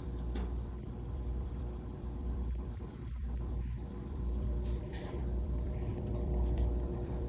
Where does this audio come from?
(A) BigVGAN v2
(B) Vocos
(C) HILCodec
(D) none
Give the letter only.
A